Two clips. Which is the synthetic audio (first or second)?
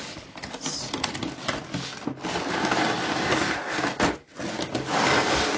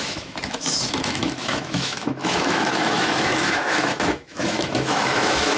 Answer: second